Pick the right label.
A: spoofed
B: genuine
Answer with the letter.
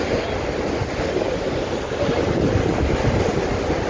B